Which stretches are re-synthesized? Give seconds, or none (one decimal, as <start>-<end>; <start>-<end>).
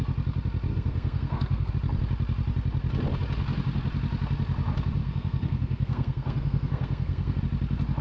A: 0.7-1.7; 5.0-7.4